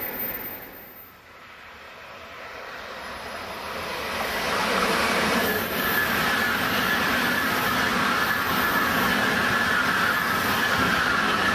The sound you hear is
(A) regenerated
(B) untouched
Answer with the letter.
B